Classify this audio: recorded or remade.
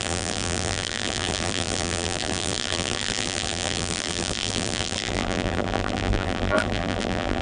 remade